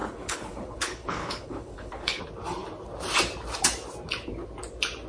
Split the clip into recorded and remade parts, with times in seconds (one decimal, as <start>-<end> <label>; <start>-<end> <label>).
0.0-2.2 remade; 2.2-5.1 recorded